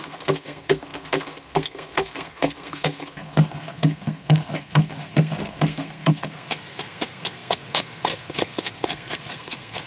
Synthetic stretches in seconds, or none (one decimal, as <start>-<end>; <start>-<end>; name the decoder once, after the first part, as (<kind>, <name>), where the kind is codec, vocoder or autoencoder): 0.0-9.9 (codec, SNAC)

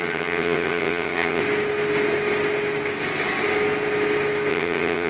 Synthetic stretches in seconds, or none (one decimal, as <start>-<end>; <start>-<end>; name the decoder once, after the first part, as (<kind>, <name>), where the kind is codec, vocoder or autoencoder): 0.0-1.4 (vocoder, HiFi-GAN); 4.5-5.1

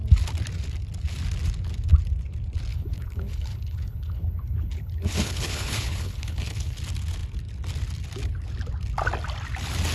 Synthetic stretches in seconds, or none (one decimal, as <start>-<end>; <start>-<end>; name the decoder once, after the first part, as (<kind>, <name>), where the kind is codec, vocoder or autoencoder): 2.7-6.8 (codec, HILCodec)

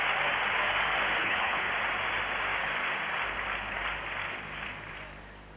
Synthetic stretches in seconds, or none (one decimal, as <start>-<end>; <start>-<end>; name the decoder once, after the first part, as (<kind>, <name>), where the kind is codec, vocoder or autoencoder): 1.2-1.7 (codec, HILCodec)